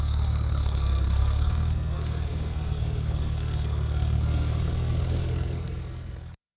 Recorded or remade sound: remade